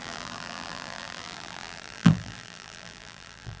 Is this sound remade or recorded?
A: remade